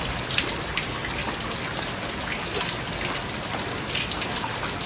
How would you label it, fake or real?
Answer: real